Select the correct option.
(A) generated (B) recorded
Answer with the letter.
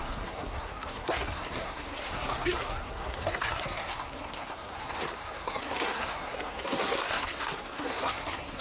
A